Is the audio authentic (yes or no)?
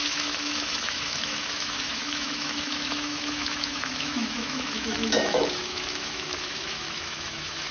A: no